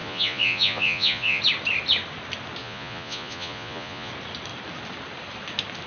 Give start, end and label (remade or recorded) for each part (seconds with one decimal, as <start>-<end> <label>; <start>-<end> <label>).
0.0-1.4 remade; 1.4-2.6 recorded; 2.6-4.1 remade; 4.1-5.9 recorded